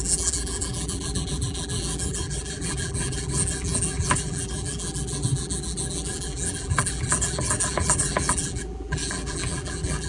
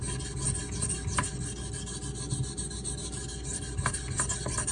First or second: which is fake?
first